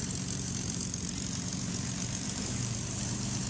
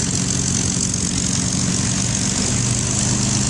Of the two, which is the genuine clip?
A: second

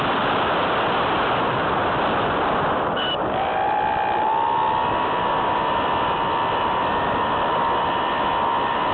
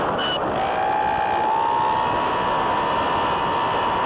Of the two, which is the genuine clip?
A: second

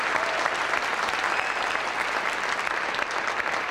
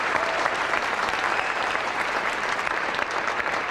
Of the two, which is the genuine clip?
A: first